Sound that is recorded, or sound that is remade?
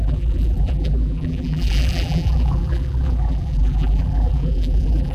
remade